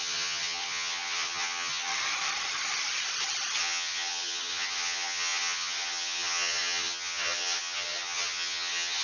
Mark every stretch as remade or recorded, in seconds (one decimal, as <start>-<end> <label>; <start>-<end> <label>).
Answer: 0.0-1.9 remade; 1.9-3.6 recorded; 3.6-9.0 remade